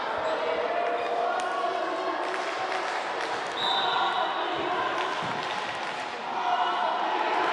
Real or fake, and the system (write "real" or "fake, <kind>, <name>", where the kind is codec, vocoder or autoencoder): real